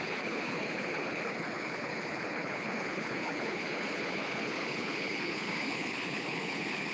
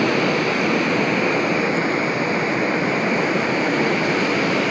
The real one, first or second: second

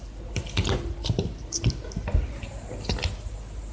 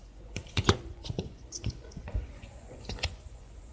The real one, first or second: first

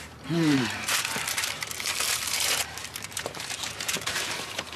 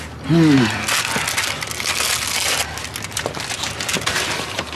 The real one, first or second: second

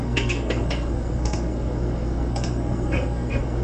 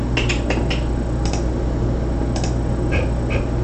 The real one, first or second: second